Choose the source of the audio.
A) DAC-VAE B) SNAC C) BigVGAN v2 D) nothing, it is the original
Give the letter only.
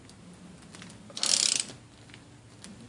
D